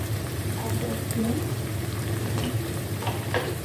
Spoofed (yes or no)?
yes